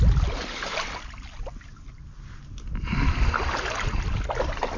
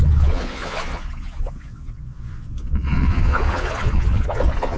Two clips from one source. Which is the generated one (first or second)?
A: second